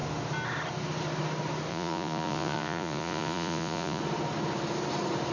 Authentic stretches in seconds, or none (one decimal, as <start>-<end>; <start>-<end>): 0.0-1.7; 4.0-5.3